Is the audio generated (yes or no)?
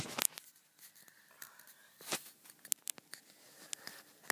no